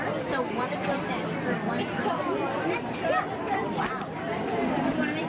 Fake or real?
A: real